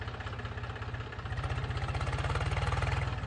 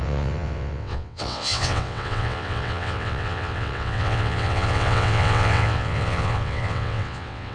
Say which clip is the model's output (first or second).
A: second